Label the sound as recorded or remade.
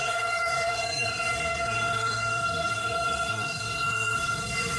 remade